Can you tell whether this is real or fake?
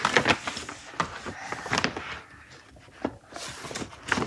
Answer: real